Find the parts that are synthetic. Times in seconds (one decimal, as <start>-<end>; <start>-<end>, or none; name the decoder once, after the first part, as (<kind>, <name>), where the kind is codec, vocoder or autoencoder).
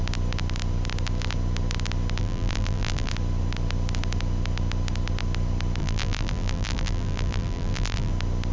2.2-3.1 (vocoder, BigVGAN v2); 5.8-8.1